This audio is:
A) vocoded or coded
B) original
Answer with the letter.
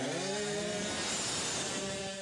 B